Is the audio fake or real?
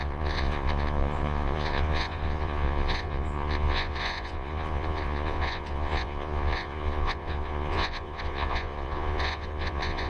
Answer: fake